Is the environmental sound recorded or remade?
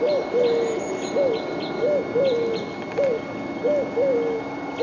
recorded